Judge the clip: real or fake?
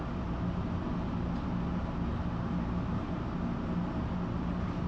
real